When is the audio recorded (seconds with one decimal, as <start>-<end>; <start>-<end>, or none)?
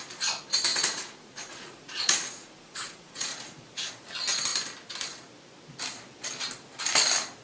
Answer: 0.0-0.7; 3.9-7.4